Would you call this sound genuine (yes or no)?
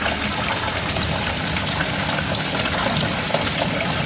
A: yes